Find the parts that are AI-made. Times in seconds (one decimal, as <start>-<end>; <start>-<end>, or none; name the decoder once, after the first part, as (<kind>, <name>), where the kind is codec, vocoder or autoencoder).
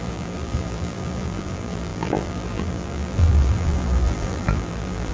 0.0-5.1 (vocoder, BigVGAN v2)